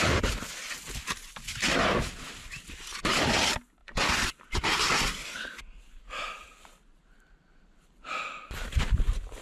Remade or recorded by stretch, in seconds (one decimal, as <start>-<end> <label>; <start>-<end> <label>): 0.0-3.8 recorded; 3.8-9.0 remade; 9.0-9.4 recorded